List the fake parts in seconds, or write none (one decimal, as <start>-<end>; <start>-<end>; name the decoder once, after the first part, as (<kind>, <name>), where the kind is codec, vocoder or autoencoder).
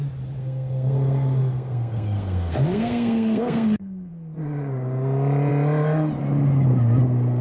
0.4-4.1 (codec, SNAC)